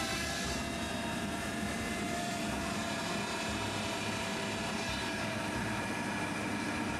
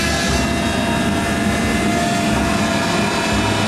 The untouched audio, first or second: second